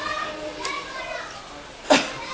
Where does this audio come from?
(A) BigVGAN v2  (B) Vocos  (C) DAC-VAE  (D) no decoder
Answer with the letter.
D